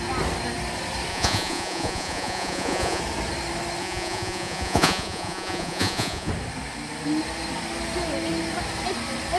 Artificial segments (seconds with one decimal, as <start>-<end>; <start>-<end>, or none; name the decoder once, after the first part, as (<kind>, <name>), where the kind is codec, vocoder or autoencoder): 1.1-3.0 (vocoder, Vocos); 3.8-6.3

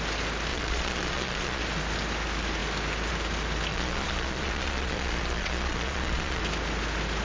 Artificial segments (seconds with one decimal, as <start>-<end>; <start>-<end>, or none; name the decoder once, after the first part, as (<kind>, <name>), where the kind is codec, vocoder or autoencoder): 0.5-1.6 (vocoder, Vocos); 3.7-6.4

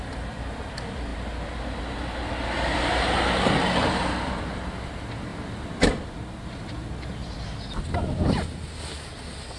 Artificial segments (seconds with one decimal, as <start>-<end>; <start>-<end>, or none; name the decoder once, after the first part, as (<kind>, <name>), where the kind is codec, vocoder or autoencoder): none